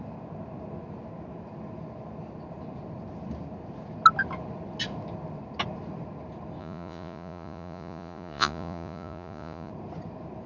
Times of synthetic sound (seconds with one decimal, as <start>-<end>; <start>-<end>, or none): 6.6-9.7